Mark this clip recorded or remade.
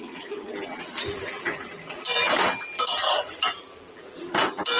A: remade